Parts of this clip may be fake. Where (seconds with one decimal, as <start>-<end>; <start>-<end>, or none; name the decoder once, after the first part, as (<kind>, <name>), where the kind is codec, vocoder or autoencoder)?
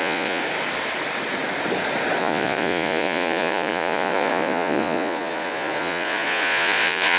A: 0.0-0.4 (vocoder, Vocos); 2.2-7.2